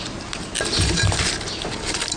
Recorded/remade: recorded